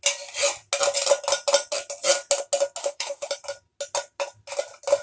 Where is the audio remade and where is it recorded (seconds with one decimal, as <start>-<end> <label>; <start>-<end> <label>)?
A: 0.0-2.8 recorded; 2.8-3.3 remade; 3.3-5.0 recorded